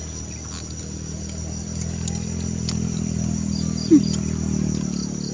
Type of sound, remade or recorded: recorded